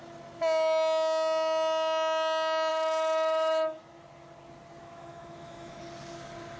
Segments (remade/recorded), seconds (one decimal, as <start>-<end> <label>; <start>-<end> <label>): 0.0-2.7 recorded; 2.7-3.8 remade; 3.8-4.8 recorded; 4.8-5.8 remade; 5.8-6.6 recorded

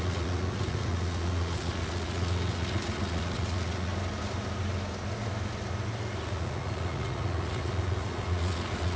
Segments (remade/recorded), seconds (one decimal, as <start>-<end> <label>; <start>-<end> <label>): 0.0-3.9 remade; 3.9-6.2 recorded; 6.2-9.0 remade

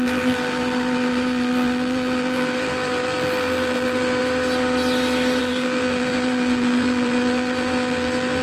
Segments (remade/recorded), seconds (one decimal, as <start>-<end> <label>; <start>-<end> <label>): 0.0-4.2 remade; 4.2-5.4 recorded; 5.4-8.4 remade

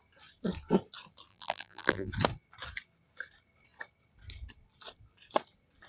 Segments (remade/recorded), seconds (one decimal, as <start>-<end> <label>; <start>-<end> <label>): 0.0-1.3 recorded; 1.3-2.1 remade; 2.1-5.9 recorded

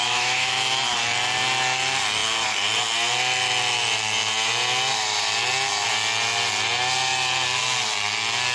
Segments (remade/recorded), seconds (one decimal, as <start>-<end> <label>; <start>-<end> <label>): 0.0-0.5 remade; 0.5-8.5 recorded